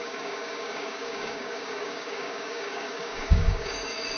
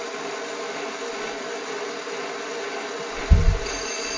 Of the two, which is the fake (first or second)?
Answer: first